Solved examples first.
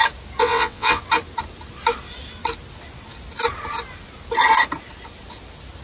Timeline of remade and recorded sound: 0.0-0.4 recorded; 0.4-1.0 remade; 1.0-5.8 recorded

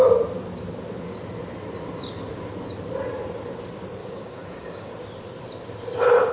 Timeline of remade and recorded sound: 0.0-4.0 recorded; 4.0-4.9 remade; 4.9-6.3 recorded

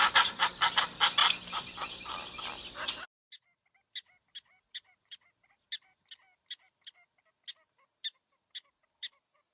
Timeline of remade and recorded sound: 0.0-9.5 recorded